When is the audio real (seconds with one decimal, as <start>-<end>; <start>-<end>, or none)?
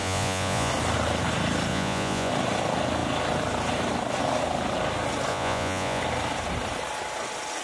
0.7-1.7; 2.3-5.3; 6.0-7.6